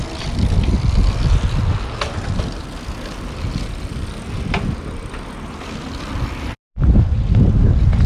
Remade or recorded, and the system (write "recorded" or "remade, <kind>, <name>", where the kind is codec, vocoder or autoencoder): recorded